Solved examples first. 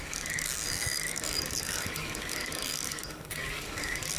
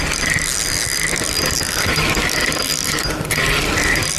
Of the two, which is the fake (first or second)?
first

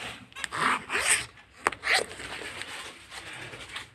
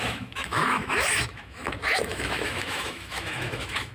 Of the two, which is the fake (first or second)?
second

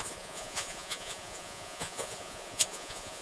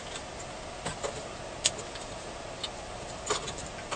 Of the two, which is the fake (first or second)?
first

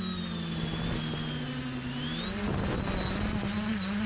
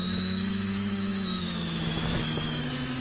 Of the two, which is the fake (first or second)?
second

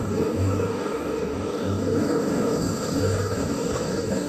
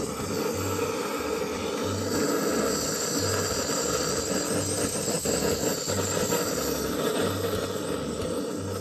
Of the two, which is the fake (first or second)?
first